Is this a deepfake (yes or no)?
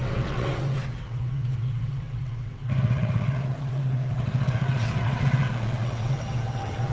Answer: yes